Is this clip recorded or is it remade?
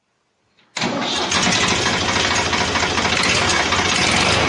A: recorded